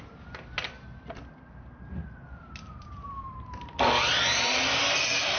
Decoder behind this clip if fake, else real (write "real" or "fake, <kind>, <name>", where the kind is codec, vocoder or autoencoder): real